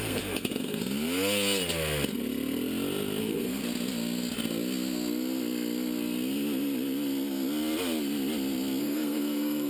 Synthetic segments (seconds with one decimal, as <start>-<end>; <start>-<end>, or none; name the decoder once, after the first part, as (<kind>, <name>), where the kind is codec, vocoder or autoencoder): 0.0-0.8 (codec, SNAC); 3.2-3.6; 8.8-9.7